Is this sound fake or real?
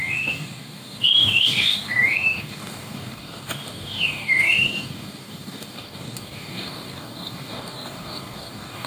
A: fake